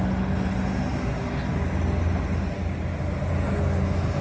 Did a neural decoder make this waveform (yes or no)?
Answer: no